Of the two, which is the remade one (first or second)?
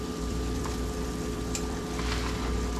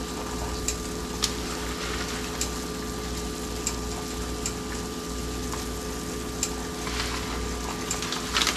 first